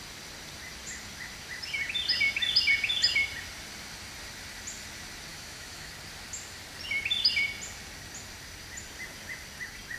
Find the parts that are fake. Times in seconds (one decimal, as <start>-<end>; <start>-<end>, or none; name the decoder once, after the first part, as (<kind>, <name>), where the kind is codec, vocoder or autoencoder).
5.3-5.9 (autoencoder, DAC-VAE)

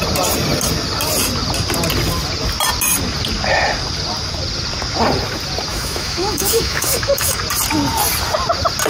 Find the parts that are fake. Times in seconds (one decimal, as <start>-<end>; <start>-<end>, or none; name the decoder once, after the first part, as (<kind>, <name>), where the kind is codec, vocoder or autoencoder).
5.7-7.4 (autoencoder, DAC-VAE)

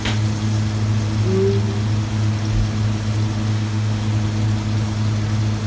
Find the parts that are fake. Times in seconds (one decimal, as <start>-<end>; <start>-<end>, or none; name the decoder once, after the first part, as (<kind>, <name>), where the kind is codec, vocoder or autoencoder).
3.5-4.0 (autoencoder, DAC-VAE)

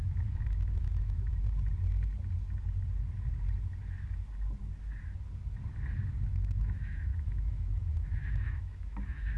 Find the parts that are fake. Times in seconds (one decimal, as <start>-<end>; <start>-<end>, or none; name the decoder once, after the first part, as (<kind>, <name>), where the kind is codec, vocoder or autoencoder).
0.0-1.3 (autoencoder, DAC-VAE); 6.3-9.4

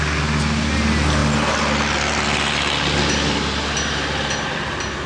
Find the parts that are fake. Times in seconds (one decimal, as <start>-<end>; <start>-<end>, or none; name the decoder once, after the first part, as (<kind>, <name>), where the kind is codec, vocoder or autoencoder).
none

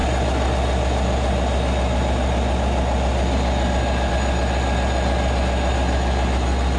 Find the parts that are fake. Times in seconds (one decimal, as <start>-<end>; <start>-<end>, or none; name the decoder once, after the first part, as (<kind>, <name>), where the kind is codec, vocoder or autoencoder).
none